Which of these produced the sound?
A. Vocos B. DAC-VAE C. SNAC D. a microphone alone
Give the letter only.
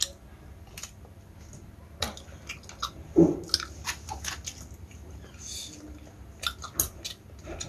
D